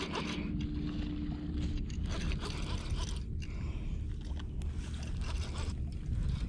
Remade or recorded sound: recorded